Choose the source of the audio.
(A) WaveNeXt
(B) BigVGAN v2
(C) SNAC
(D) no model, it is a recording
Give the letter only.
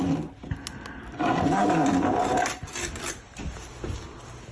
D